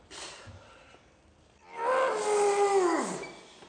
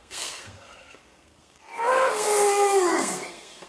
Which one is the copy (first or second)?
second